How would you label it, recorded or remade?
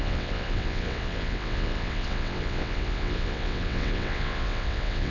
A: remade